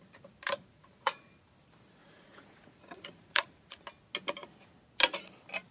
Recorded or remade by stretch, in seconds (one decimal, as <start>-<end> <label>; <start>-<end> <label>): 0.0-0.6 recorded; 0.6-1.3 remade; 1.3-2.0 recorded; 2.0-3.8 remade; 3.8-5.7 recorded